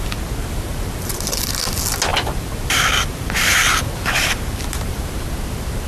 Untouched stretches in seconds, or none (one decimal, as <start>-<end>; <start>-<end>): 0.0-0.4; 1.4-2.1; 5.3-5.9

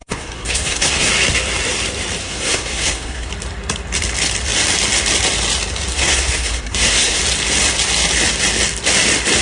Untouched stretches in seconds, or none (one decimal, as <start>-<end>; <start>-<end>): 1.1-2.2; 3.3-5.9; 7.2-9.4

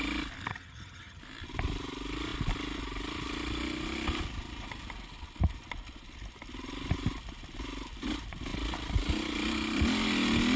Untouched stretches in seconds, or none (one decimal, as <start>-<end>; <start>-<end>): 0.0-0.5; 1.2-10.6